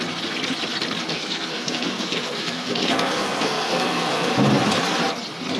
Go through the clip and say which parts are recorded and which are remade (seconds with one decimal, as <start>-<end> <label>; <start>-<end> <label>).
0.0-1.1 recorded; 1.1-4.3 remade; 4.3-5.6 recorded